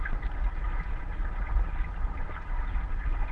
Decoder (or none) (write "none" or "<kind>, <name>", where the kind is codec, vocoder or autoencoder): none